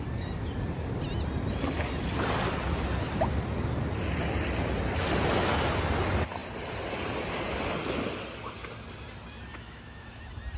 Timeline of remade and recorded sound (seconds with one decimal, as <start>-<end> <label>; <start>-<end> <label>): 0.0-9.5 recorded; 9.5-10.2 remade; 10.2-10.6 recorded